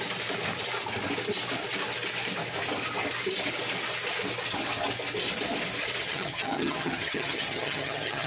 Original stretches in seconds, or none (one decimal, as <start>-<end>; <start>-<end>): 0.0-6.0